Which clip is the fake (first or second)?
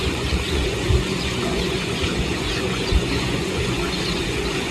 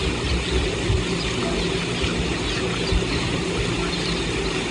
first